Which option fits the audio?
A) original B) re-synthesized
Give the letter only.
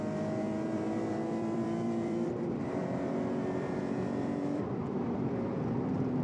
B